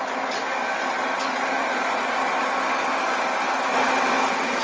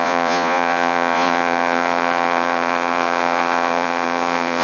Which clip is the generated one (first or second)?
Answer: second